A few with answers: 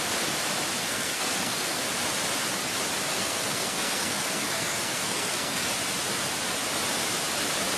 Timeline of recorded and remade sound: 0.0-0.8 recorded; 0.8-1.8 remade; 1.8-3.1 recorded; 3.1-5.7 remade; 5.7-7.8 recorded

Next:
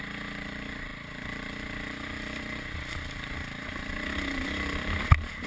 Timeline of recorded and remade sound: 0.0-5.5 recorded

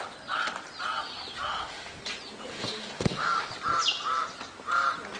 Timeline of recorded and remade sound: 0.0-1.5 recorded; 1.5-2.0 remade; 2.0-2.5 recorded; 2.5-3.5 remade; 3.5-5.2 recorded

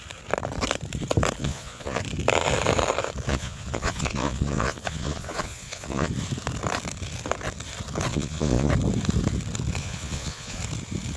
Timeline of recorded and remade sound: 0.0-1.4 recorded; 1.4-2.0 remade; 2.0-3.3 recorded; 3.3-6.1 remade; 6.1-8.1 recorded; 8.1-8.7 remade; 8.7-9.8 recorded; 9.8-10.6 remade; 10.6-11.2 recorded

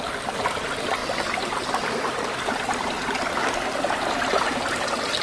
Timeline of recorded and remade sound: 0.0-5.2 recorded